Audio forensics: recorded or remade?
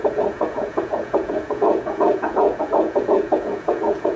remade